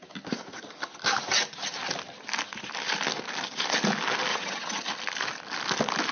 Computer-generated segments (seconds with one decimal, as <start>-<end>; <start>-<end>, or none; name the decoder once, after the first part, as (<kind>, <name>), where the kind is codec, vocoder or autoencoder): 4.3-4.9 (vocoder, HiFi-GAN)